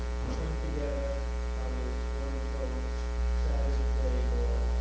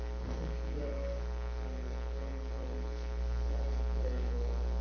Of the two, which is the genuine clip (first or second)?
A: first